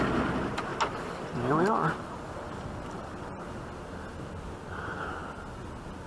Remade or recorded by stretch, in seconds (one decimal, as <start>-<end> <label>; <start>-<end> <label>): 0.0-6.1 recorded